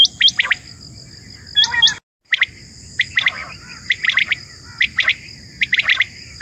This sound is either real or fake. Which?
real